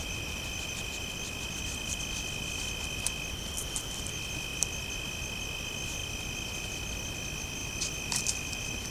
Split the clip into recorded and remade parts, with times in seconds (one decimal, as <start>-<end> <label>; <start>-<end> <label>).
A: 0.0-6.0 recorded; 6.0-6.7 remade; 6.7-7.6 recorded; 7.6-8.2 remade; 8.2-8.9 recorded

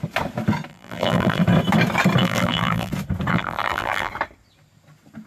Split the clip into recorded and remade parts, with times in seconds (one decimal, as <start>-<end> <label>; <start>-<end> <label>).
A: 0.0-0.7 recorded; 0.7-1.4 remade; 1.4-2.2 recorded; 2.2-2.9 remade; 2.9-3.3 recorded; 3.3-4.1 remade; 4.1-5.3 recorded